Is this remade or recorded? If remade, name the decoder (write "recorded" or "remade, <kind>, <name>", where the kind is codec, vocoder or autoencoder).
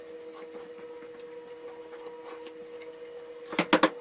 recorded